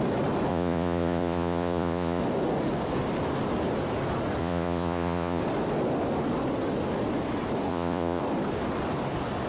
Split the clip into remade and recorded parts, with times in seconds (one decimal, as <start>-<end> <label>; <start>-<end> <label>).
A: 0.0-0.5 recorded; 0.5-2.2 remade; 2.2-4.4 recorded; 4.4-5.4 remade; 5.4-7.7 recorded; 7.7-8.2 remade; 8.2-9.5 recorded